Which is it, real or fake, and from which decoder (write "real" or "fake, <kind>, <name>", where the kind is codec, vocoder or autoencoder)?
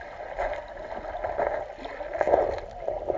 real